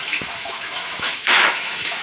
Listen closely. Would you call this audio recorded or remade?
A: remade